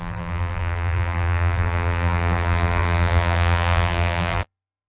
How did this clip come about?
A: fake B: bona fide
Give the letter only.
A